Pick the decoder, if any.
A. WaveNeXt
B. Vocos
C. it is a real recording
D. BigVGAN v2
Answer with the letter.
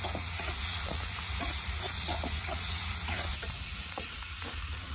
B